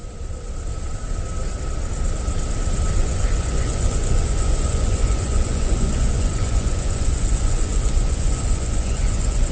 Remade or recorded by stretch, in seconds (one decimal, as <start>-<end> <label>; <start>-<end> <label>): 0.0-3.0 recorded; 3.0-9.5 remade